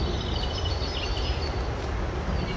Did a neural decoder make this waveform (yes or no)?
no